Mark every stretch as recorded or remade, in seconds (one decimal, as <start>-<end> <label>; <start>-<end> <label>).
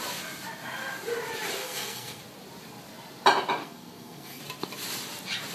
0.0-1.6 recorded; 1.6-2.2 remade; 2.2-3.6 recorded; 3.6-4.4 remade; 4.4-5.5 recorded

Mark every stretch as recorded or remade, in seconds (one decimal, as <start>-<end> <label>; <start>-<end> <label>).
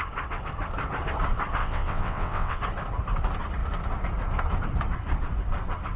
0.0-1.6 recorded; 1.6-2.6 remade; 2.6-6.0 recorded